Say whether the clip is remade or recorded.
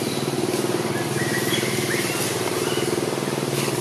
recorded